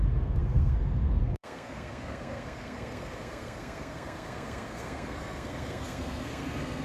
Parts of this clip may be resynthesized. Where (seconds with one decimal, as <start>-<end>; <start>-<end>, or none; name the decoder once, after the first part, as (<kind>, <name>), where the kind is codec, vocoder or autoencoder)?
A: 0.0-6.8 (codec, SNAC)